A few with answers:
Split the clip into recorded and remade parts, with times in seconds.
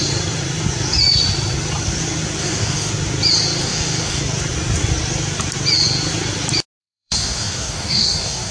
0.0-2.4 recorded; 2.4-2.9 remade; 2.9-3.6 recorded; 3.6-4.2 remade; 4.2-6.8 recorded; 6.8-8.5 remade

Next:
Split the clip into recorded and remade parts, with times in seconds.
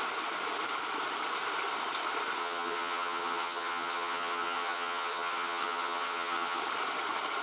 0.0-2.4 recorded; 2.4-6.6 remade; 6.6-7.4 recorded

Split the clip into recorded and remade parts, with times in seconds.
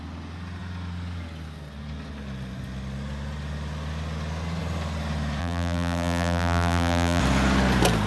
0.0-5.4 recorded; 5.4-7.2 remade; 7.2-8.1 recorded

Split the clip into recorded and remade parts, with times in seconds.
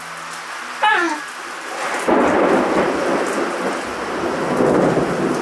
0.0-5.4 recorded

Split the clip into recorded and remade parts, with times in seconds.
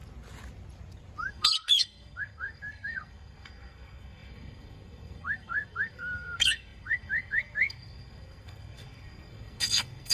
0.0-1.3 recorded; 1.3-10.1 remade